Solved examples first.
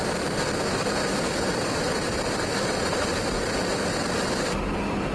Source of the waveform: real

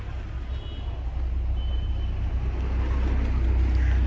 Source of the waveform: real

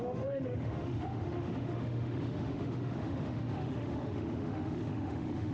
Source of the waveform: fake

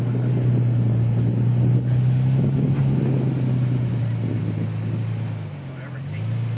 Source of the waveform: real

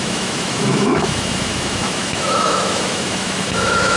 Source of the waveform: fake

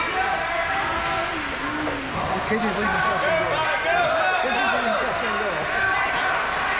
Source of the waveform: real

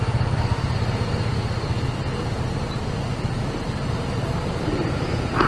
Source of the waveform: real